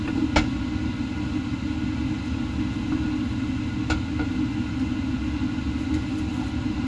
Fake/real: real